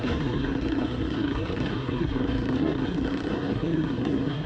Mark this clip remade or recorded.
remade